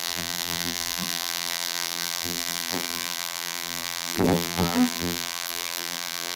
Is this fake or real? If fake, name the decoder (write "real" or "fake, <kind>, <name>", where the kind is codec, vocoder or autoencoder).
fake, vocoder, BigVGAN v2